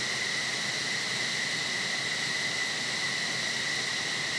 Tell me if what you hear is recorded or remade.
recorded